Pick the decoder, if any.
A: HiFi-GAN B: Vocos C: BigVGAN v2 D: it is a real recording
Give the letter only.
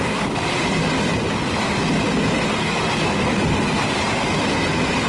D